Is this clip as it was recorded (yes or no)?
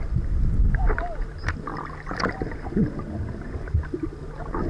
yes